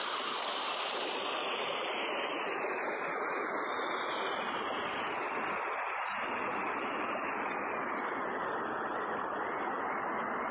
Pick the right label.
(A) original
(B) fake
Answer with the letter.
A